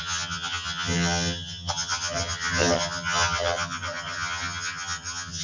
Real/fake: fake